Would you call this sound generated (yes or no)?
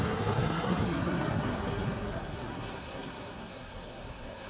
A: yes